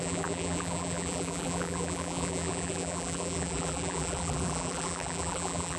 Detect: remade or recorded remade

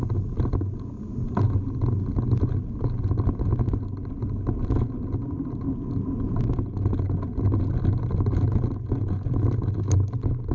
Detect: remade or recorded recorded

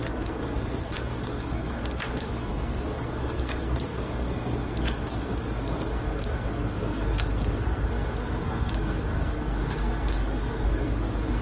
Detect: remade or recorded remade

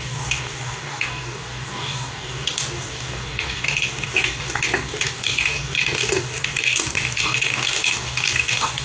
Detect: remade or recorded remade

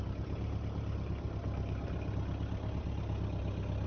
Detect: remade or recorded recorded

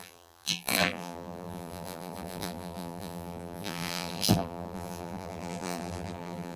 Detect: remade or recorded remade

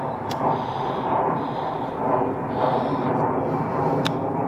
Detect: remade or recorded remade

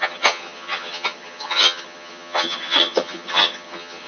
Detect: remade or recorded remade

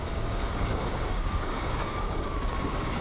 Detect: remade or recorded remade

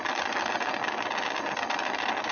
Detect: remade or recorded recorded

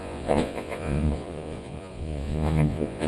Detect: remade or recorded remade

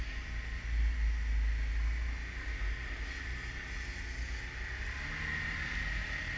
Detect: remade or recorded recorded